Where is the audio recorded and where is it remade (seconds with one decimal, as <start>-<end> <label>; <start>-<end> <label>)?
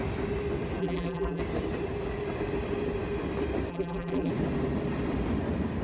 0.0-0.8 recorded; 0.8-1.4 remade; 1.4-3.7 recorded; 3.7-4.3 remade; 4.3-5.8 recorded